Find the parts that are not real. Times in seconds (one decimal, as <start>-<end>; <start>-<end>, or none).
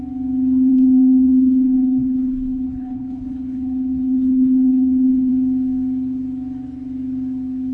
0.7-5.3